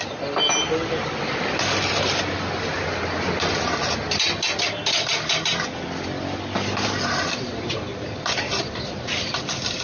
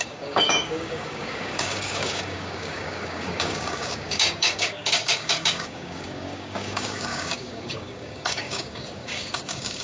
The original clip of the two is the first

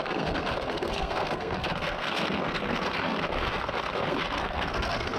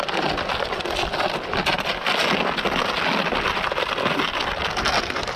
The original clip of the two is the second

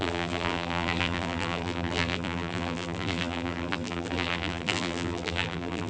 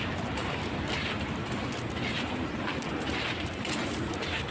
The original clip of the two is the second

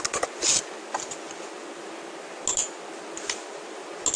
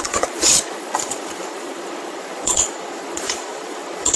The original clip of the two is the first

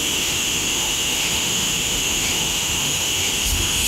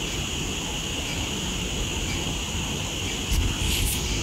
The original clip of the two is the second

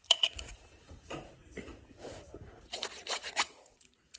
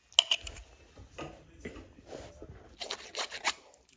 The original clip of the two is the second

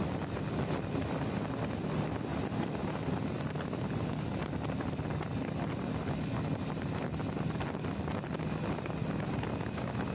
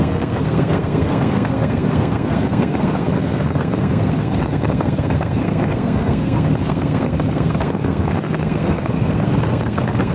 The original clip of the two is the first